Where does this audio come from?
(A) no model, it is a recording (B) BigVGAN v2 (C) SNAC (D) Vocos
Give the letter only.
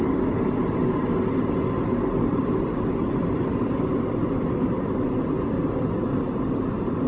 A